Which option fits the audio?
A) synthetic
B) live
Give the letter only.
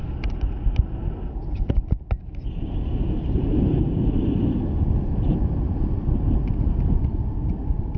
B